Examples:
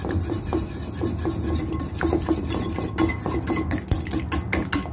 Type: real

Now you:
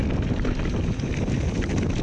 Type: real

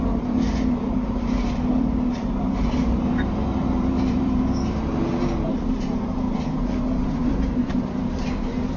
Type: fake